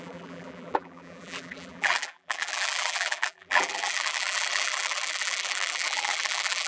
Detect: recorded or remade remade